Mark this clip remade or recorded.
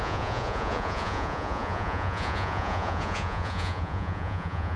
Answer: remade